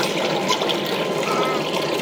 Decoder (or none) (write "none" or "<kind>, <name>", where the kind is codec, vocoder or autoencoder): none